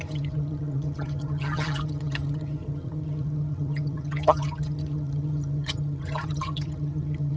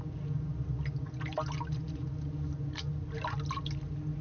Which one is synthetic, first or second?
first